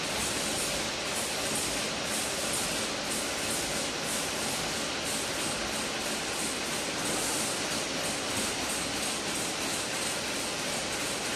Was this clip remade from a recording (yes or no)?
no